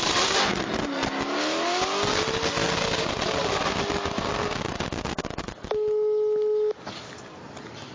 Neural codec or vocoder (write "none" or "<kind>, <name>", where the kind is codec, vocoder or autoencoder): none